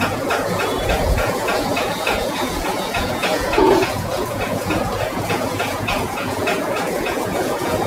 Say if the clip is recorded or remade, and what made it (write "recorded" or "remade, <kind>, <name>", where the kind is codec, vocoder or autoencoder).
remade, vocoder, Vocos